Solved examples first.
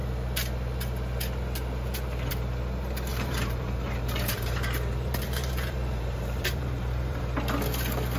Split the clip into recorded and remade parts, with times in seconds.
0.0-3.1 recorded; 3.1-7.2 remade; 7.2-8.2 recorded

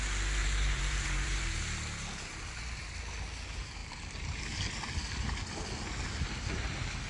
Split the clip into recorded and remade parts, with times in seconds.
0.0-0.4 recorded; 0.4-1.6 remade; 1.6-3.8 recorded; 3.8-4.4 remade; 4.4-7.1 recorded

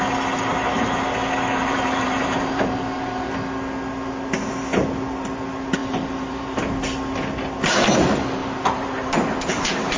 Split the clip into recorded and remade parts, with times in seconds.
0.0-1.6 recorded; 1.6-3.2 remade; 3.2-5.8 recorded; 5.8-6.7 remade; 6.7-8.4 recorded; 8.4-10.0 remade

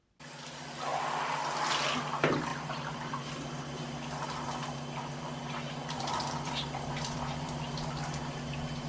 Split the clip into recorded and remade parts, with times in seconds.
0.0-2.5 recorded; 2.5-7.6 remade; 7.6-8.9 recorded

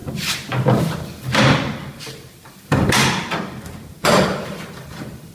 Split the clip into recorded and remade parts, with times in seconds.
0.0-1.8 recorded; 1.8-5.3 remade

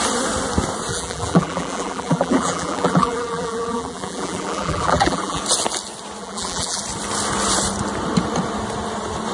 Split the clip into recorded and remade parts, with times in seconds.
0.0-0.9 recorded; 0.9-5.4 remade; 5.4-6.2 recorded; 6.2-6.8 remade; 6.8-9.3 recorded

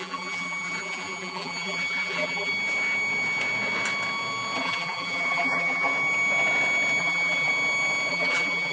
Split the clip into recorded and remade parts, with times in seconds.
0.0-2.5 remade; 2.5-4.6 recorded; 4.6-5.9 remade; 5.9-7.0 recorded; 7.0-7.5 remade; 7.5-8.1 recorded; 8.1-8.7 remade